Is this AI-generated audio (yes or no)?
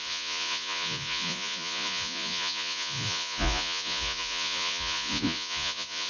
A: yes